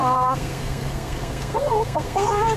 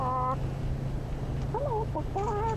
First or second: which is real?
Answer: second